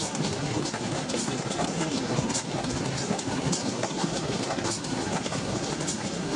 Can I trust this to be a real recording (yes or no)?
no